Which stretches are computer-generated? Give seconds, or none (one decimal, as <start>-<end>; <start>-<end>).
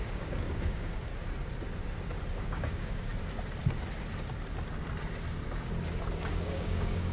0.0-1.1; 2.4-3.1; 6.3-7.1